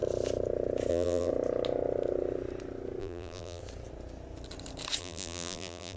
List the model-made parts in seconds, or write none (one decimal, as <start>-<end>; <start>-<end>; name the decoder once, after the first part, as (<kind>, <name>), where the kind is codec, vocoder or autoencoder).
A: 0.9-1.3 (vocoder, BigVGAN v2); 3.0-3.6; 5.0-6.0